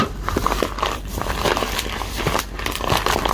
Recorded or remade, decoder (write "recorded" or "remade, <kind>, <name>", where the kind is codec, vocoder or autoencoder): remade, vocoder, BigVGAN v2